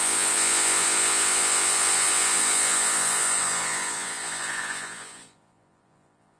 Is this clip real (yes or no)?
no